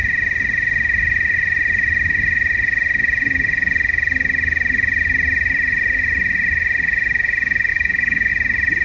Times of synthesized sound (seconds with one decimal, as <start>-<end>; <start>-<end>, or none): 7.7-8.3